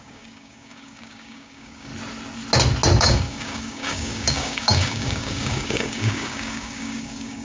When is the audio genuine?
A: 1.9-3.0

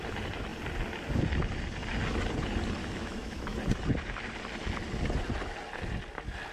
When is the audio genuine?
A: 0.0-2.8; 3.6-6.5

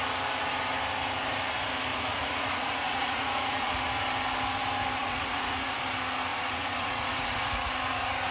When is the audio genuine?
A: 0.0-1.9; 3.7-5.0; 5.8-6.3; 7.7-8.3